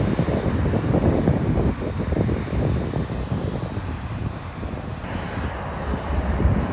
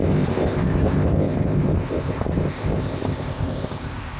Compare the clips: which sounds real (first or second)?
first